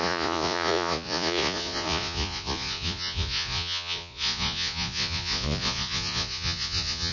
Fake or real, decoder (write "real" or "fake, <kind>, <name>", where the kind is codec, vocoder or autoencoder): fake, vocoder, Vocos